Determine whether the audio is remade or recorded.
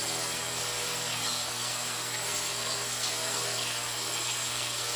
remade